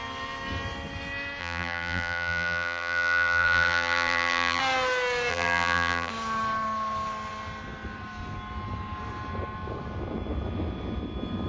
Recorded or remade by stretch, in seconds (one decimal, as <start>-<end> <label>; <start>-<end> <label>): 0.0-1.4 recorded; 1.4-4.6 remade; 4.6-5.3 recorded; 5.3-6.1 remade; 6.1-11.5 recorded